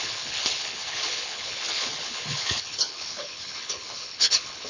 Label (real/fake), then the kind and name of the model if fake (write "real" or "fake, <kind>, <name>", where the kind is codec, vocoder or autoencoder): fake, codec, HILCodec